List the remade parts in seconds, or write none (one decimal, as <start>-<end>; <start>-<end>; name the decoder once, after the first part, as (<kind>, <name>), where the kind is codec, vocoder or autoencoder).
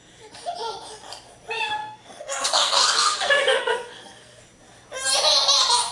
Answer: 1.8-4.4 (codec, SNAC)